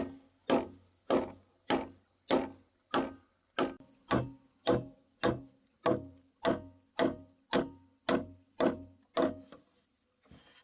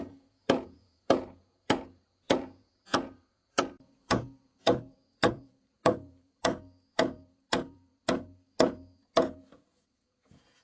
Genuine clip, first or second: first